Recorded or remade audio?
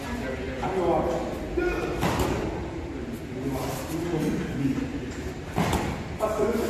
recorded